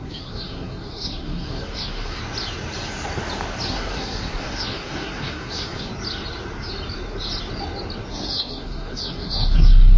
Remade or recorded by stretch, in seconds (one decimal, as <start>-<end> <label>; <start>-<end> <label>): 0.0-2.2 remade; 2.2-3.7 recorded; 3.7-5.9 remade; 5.9-8.1 recorded; 8.1-10.0 remade